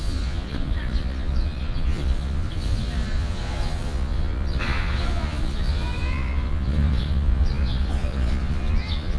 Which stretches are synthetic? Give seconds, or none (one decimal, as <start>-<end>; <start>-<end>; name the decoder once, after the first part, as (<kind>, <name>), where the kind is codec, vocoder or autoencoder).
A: 0.0-9.2 (vocoder, Vocos)